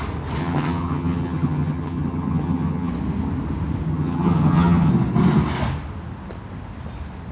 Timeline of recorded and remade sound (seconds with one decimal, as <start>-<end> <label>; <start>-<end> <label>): 0.0-0.4 recorded; 0.4-2.9 remade; 2.9-3.9 recorded; 3.9-4.9 remade; 4.9-7.3 recorded